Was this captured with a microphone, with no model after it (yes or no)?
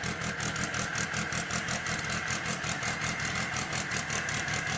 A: yes